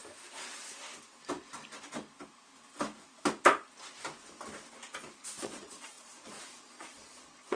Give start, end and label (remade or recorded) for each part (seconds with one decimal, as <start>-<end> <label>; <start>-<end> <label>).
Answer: 0.0-5.4 recorded; 5.4-7.6 remade